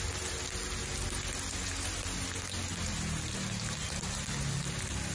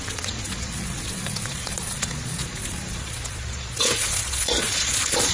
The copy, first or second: second